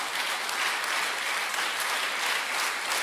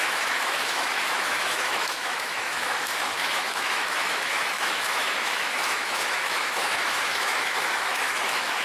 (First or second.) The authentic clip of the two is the first